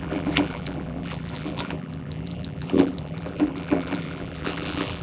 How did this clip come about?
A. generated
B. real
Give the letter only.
A